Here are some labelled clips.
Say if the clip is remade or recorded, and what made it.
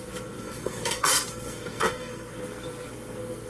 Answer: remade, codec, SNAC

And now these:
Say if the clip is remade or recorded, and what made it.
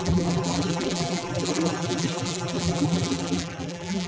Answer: remade, vocoder, BigVGAN v2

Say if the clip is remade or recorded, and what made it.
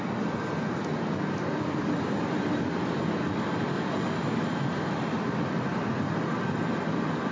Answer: recorded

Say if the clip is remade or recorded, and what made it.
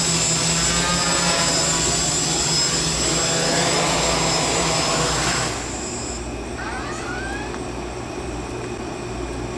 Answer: recorded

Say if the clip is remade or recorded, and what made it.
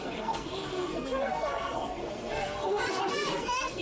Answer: remade, codec, SNAC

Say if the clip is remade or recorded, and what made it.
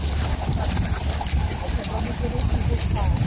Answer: recorded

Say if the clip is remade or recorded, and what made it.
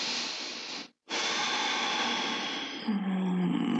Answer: recorded